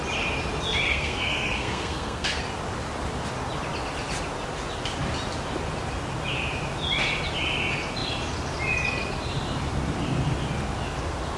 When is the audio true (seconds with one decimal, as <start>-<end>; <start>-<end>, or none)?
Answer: 0.0-0.9; 2.4-11.4